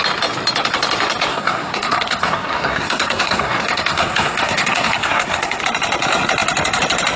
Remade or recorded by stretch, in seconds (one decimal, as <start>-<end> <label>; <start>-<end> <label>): 0.0-1.3 recorded; 1.3-5.6 remade; 5.6-7.2 recorded